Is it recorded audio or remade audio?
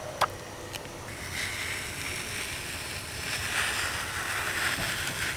recorded